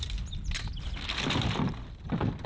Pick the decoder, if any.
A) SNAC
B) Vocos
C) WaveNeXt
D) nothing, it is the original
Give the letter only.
D